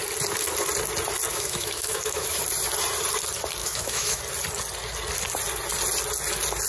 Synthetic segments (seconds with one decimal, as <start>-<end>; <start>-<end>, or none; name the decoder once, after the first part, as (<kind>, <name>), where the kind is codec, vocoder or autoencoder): 1.3-2.4 (autoencoder, DAC-VAE); 3.6-4.2